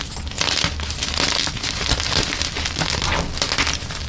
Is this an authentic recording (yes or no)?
yes